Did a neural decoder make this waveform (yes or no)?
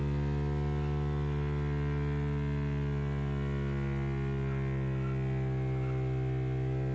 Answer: no